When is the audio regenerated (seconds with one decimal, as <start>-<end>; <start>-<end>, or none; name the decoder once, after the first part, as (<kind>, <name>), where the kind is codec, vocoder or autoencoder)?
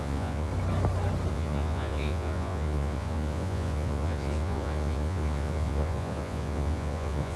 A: 0.0-0.5 (vocoder, Vocos); 1.3-7.4